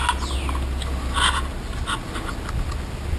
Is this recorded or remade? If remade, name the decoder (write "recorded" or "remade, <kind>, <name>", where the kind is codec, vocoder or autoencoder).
recorded